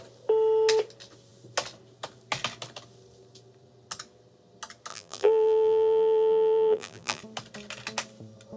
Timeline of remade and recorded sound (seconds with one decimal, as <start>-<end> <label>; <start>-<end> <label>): 0.0-4.9 recorded; 4.9-7.2 remade; 7.2-8.6 recorded